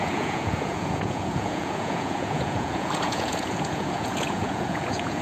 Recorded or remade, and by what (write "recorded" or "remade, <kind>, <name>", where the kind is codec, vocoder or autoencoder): remade, vocoder, Vocos